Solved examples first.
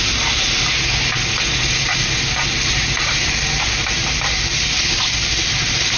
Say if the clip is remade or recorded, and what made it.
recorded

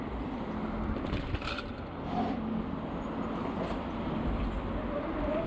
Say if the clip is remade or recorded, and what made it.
recorded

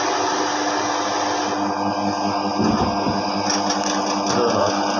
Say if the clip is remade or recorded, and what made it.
recorded